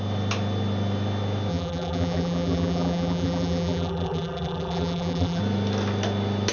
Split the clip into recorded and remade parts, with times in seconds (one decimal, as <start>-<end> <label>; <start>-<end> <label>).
0.0-1.5 recorded; 1.5-5.4 remade; 5.4-6.5 recorded